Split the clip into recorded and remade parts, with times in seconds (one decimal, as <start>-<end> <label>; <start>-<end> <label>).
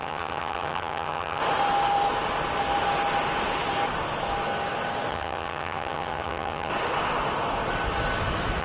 0.0-1.4 remade; 1.4-5.1 recorded; 5.1-6.7 remade; 6.7-8.6 recorded